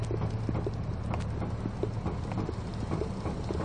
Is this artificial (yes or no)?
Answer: no